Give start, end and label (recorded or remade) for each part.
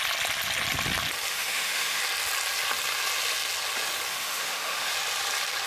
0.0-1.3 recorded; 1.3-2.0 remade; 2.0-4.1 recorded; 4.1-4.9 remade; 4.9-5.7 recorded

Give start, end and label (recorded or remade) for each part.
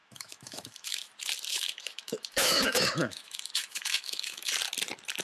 0.0-1.1 remade; 1.1-1.5 recorded; 1.5-4.5 remade; 4.5-5.2 recorded